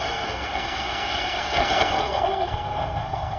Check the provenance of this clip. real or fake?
fake